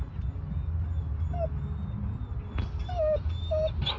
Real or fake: real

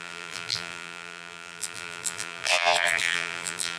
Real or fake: fake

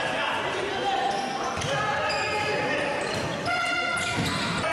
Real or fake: real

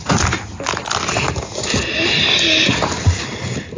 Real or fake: real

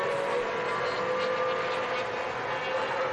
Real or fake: real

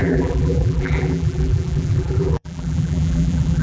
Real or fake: fake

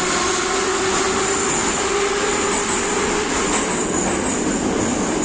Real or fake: real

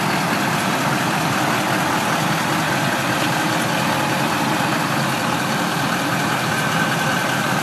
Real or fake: real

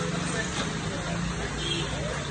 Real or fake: real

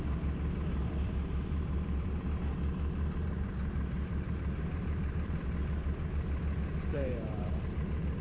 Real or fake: fake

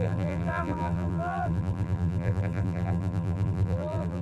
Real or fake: fake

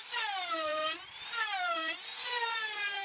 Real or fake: fake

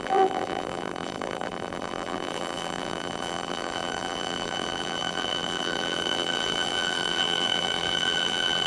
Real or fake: fake